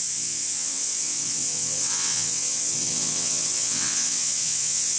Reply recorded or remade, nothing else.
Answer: remade